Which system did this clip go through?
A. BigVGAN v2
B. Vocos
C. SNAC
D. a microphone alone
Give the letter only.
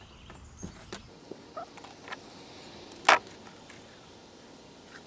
D